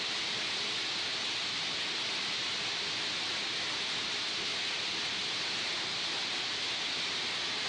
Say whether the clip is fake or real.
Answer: real